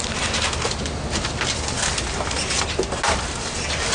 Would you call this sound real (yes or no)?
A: yes